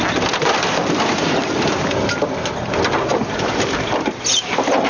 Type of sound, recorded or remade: recorded